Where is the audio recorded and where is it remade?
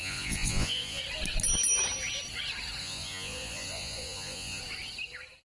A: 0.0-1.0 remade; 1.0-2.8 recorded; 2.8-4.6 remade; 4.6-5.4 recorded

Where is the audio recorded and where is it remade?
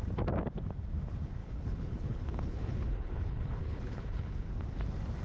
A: 0.0-1.4 recorded; 1.4-4.5 remade; 4.5-5.2 recorded